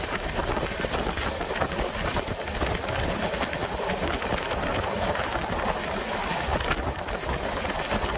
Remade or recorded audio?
recorded